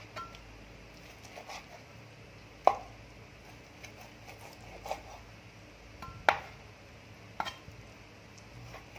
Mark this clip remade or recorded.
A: recorded